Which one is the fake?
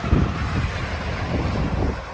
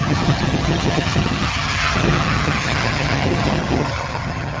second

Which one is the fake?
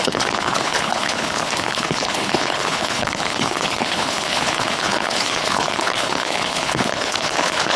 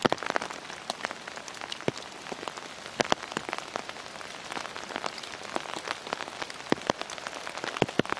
first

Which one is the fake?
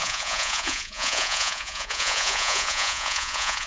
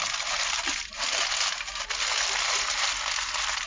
first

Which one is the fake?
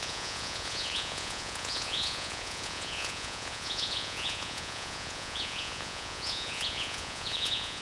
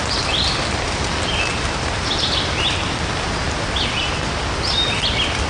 first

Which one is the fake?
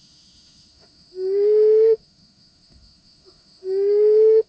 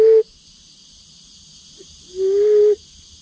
first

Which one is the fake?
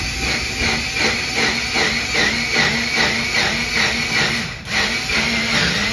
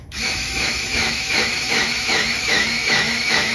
second